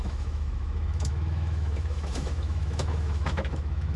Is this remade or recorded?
remade